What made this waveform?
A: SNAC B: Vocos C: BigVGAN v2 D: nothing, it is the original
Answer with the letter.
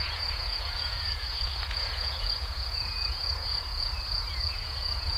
B